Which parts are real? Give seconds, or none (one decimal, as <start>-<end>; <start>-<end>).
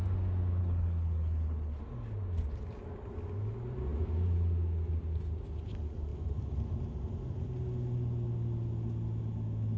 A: 0.0-0.6; 1.8-9.8